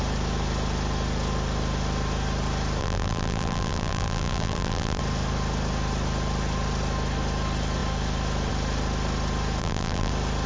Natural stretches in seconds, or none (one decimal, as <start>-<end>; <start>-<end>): 0.0-2.8; 5.0-9.6; 10.1-10.5